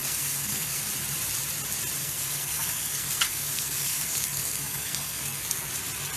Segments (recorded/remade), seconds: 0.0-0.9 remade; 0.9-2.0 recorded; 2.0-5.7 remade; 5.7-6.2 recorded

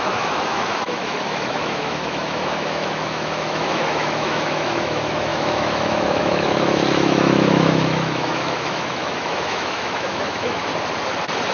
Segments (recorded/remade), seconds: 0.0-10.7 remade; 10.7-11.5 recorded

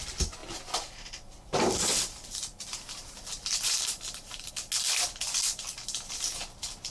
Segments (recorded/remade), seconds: 0.0-0.4 recorded; 0.4-4.5 remade; 4.5-6.9 recorded

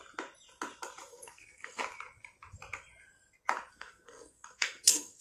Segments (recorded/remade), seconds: 0.0-1.1 recorded; 1.1-1.8 remade; 1.8-3.7 recorded; 3.7-5.2 remade

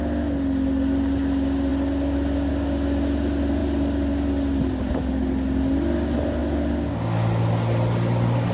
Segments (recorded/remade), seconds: 0.0-8.5 recorded